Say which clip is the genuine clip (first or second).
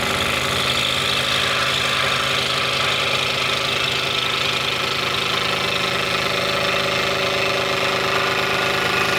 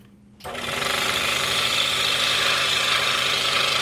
first